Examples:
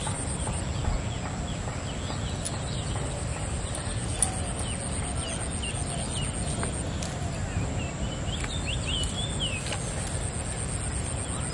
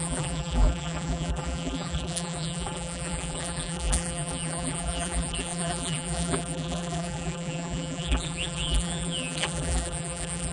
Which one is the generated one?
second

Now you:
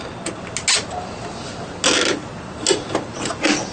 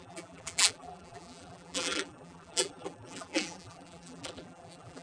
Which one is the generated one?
second